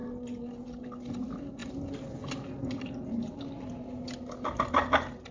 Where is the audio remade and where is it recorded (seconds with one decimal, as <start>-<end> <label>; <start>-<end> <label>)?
0.0-5.3 recorded